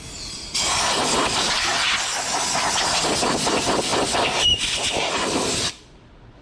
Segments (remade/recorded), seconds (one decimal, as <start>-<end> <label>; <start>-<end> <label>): 0.0-1.7 remade; 1.7-3.2 recorded; 3.2-3.9 remade; 3.9-5.6 recorded; 5.6-6.4 remade